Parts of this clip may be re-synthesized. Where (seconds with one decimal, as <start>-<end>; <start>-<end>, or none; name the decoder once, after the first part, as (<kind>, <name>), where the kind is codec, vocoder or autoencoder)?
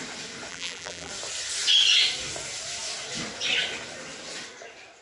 0.5-1.1 (vocoder, BigVGAN v2)